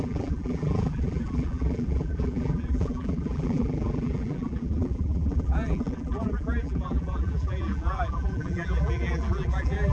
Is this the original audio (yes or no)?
no